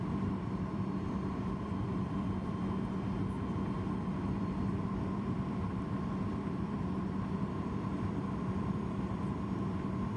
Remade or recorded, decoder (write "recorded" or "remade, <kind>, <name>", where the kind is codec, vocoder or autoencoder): remade, vocoder, BigVGAN v2